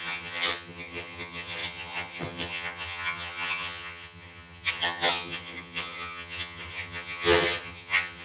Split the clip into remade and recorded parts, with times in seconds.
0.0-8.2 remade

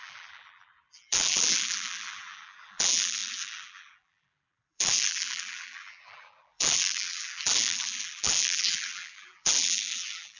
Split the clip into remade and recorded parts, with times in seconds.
0.0-10.4 remade

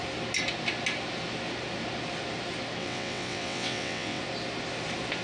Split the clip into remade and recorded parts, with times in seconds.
0.0-2.8 recorded; 2.8-4.2 remade; 4.2-5.2 recorded

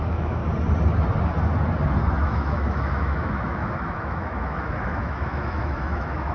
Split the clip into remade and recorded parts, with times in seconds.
0.0-0.4 remade; 0.4-2.1 recorded; 2.1-6.3 remade